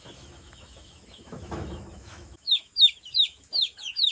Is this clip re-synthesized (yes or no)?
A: yes